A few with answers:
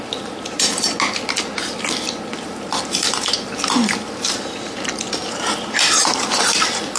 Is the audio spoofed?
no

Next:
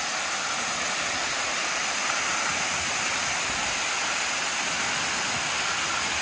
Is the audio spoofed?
no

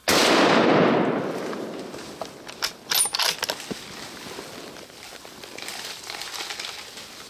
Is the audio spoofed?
no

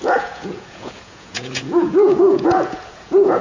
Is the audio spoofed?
yes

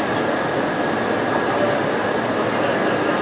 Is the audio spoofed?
no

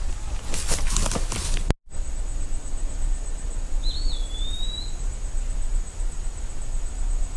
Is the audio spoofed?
no